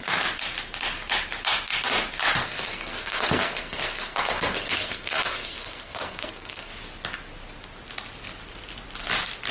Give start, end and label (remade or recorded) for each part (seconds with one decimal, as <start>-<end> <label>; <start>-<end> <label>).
0.0-2.4 recorded; 2.4-6.7 remade; 6.7-9.5 recorded